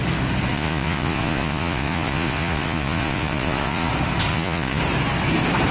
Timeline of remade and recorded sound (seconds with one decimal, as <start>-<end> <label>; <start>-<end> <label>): 0.0-0.5 recorded; 0.5-3.9 remade; 3.9-4.3 recorded; 4.3-4.8 remade; 4.8-5.7 recorded